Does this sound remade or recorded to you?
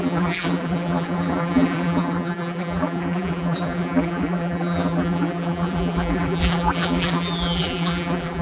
remade